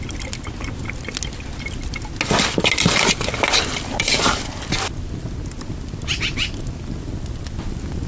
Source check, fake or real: real